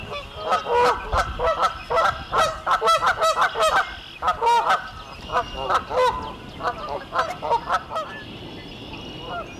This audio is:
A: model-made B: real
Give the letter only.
B